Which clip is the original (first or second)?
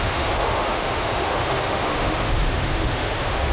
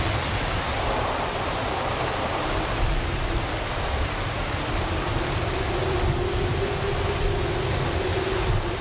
second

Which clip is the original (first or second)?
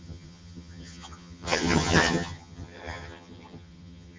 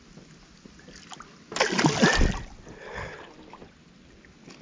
second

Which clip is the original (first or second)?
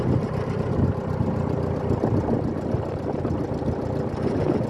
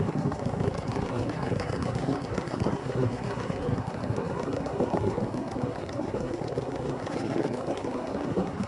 first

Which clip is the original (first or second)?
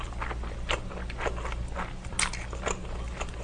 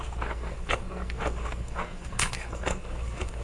first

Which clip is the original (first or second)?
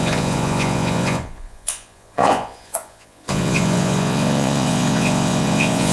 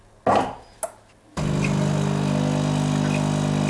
second